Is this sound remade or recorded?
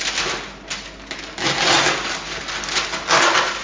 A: recorded